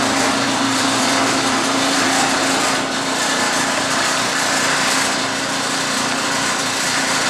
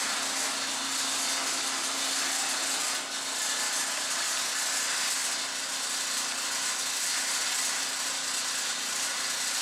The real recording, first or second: second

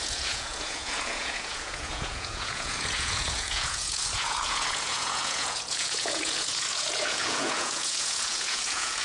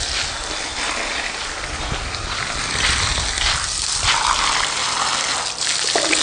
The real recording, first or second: second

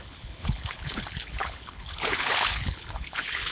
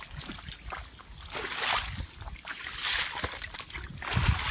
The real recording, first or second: second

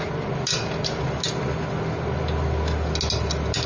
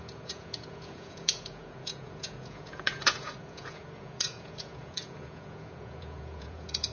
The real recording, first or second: first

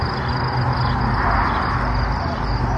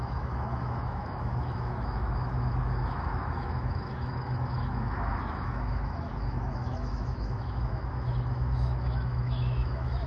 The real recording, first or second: first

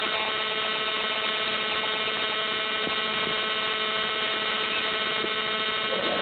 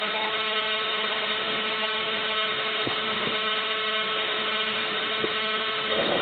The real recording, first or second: first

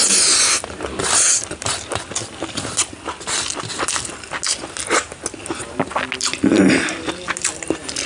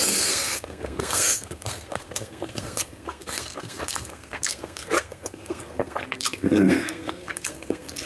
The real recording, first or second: first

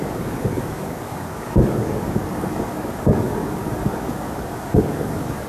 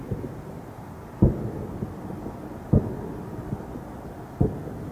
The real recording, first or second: second